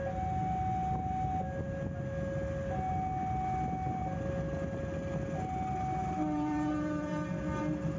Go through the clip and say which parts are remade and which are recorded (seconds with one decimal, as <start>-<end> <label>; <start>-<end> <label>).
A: 0.0-6.0 recorded; 6.0-7.6 remade; 7.6-8.0 recorded